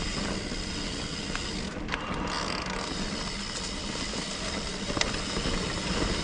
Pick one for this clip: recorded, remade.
recorded